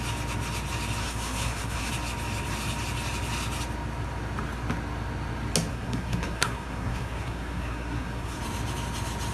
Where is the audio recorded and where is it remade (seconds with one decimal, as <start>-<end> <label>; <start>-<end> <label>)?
0.0-1.0 recorded; 1.0-1.9 remade; 1.9-5.7 recorded; 5.7-8.4 remade; 8.4-9.3 recorded

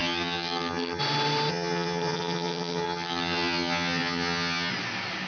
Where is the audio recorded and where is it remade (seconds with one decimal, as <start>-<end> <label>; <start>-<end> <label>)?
0.0-1.0 remade; 1.0-1.5 recorded; 1.5-4.7 remade; 4.7-5.3 recorded

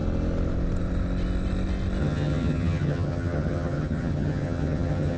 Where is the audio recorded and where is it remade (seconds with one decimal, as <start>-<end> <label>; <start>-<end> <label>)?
0.0-2.0 recorded; 2.0-5.2 remade

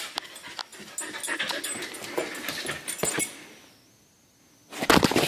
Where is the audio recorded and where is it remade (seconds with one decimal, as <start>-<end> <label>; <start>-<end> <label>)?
0.0-5.3 recorded

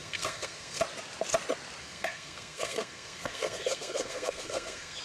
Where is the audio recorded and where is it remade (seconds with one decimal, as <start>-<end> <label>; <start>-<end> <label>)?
0.0-0.8 remade; 0.8-1.8 recorded; 1.8-5.0 remade

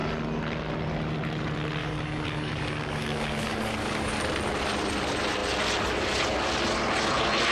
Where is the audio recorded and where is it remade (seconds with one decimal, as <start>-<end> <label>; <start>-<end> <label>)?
0.0-1.8 recorded; 1.8-4.2 remade; 4.2-7.5 recorded

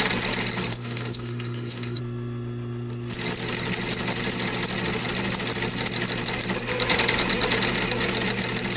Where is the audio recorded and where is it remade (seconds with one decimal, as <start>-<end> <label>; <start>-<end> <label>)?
0.0-0.7 recorded; 0.7-2.0 remade; 2.0-8.8 recorded

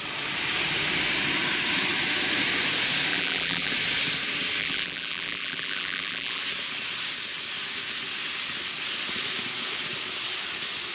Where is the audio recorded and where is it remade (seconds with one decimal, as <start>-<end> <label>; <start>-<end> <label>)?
0.0-3.1 recorded; 3.1-3.7 remade; 3.7-4.6 recorded; 4.6-6.4 remade; 6.4-10.9 recorded